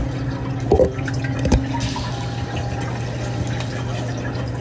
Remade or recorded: recorded